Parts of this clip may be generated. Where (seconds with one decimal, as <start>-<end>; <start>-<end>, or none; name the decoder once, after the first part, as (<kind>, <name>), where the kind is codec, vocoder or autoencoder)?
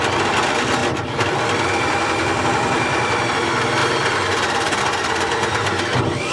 0.8-3.2 (vocoder, BigVGAN v2)